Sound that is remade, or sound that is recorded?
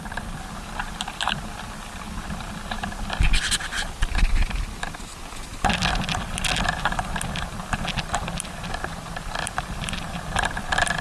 recorded